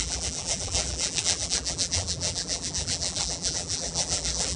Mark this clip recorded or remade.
remade